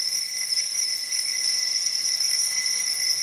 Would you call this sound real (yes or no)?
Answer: no